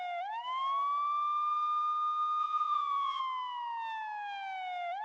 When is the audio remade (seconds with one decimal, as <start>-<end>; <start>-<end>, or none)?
2.4-3.2